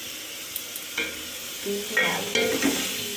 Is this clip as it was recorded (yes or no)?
yes